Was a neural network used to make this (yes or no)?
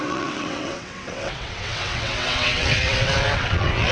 yes